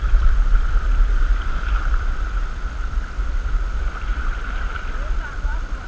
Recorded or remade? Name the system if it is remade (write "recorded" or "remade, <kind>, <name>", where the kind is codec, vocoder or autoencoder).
remade, vocoder, BigVGAN v2